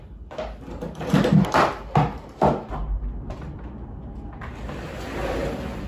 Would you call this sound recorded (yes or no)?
yes